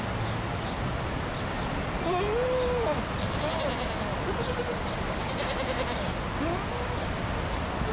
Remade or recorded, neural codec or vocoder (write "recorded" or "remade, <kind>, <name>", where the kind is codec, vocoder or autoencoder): recorded